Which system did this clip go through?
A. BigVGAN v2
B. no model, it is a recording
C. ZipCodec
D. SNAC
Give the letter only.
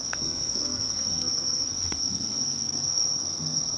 D